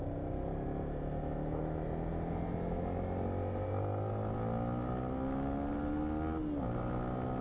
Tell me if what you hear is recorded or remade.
recorded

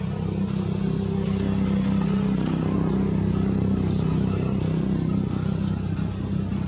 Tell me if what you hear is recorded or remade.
recorded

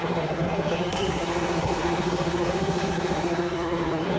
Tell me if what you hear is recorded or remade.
remade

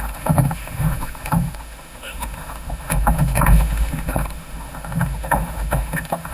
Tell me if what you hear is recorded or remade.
remade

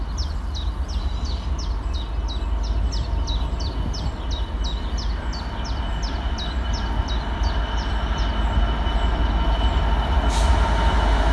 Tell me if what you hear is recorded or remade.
recorded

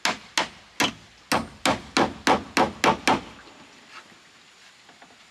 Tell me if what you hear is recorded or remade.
recorded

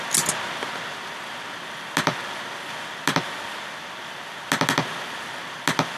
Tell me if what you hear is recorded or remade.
recorded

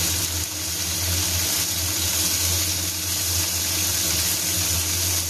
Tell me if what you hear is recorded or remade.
recorded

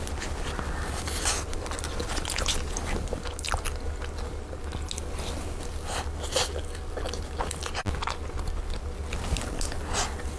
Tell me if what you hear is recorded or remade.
recorded